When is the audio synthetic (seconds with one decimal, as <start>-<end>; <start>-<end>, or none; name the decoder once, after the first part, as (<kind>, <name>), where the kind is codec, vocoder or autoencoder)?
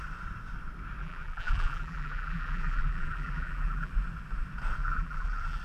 1.0-3.9 (vocoder, BigVGAN v2); 4.8-5.6